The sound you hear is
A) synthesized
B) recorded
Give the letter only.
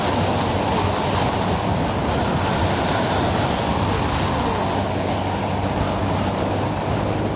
B